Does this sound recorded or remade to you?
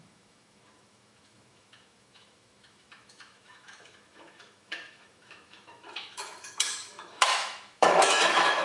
remade